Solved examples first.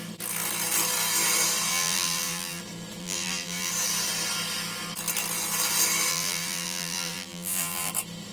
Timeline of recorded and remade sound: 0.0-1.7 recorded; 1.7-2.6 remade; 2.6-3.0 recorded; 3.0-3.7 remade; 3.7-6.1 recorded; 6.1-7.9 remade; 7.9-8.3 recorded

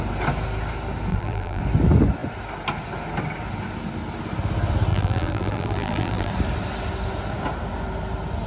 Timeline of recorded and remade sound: 0.0-1.1 recorded; 1.1-1.6 remade; 1.6-4.9 recorded; 4.9-6.3 remade; 6.3-8.5 recorded

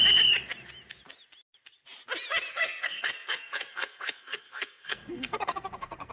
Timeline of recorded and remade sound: 0.0-2.5 recorded; 2.5-6.1 remade

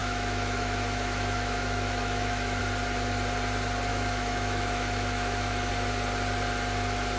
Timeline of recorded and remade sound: 0.0-2.6 remade; 2.6-3.9 recorded; 3.9-5.7 remade; 5.7-7.2 recorded